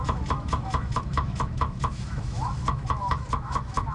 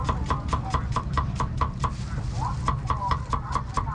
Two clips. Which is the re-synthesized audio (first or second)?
first